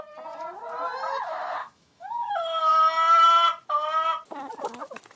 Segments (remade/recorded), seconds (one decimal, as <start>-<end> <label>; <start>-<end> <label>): 0.0-1.6 recorded; 1.6-2.3 remade; 2.3-5.2 recorded